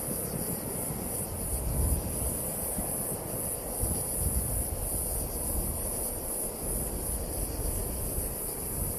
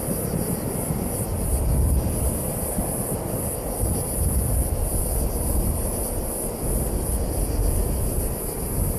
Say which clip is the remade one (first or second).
first